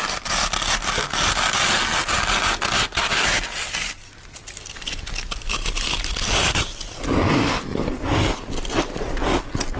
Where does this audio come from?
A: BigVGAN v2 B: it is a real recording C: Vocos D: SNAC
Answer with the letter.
B